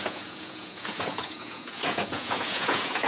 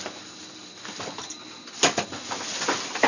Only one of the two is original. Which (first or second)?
second